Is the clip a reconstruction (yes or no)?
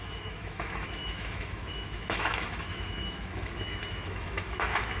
yes